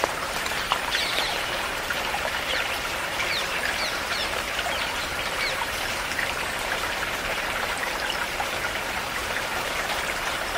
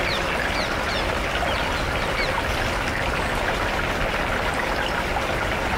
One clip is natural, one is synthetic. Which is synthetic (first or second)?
first